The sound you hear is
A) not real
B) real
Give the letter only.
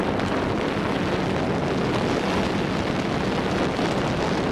B